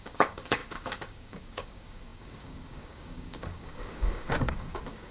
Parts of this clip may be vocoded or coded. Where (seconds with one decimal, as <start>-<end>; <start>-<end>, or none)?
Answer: 0.0-5.1